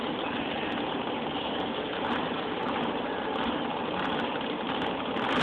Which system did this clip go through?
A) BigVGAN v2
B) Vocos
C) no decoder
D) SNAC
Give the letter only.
C